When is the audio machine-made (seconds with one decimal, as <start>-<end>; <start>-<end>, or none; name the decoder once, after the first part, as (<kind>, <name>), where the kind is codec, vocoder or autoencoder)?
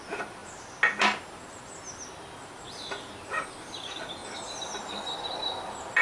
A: none